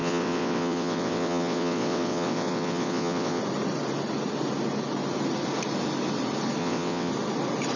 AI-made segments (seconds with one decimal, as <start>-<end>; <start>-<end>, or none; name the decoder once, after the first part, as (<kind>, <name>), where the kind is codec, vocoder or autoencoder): 0.0-3.4 (vocoder, WaveNeXt); 6.6-7.1